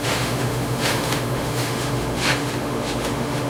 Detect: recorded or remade remade